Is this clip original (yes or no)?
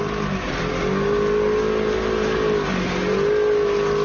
yes